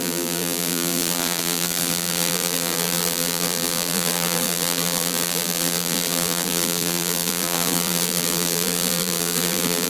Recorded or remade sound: remade